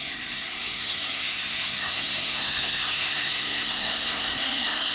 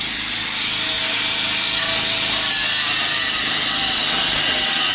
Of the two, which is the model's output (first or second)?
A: first